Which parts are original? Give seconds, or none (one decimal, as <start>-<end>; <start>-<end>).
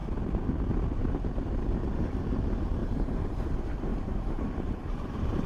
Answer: 0.0-2.8; 3.5-3.9